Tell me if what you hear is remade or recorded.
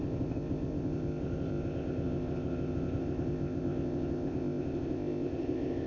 remade